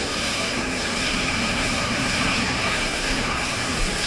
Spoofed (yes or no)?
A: yes